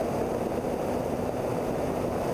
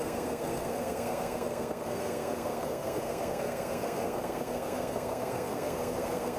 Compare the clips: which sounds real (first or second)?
first